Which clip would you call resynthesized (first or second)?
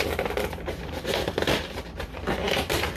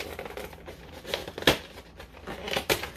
first